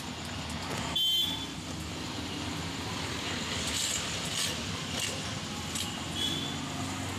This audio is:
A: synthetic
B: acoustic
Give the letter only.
B